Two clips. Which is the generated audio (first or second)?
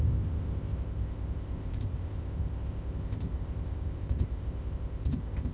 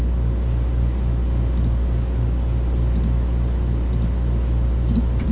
first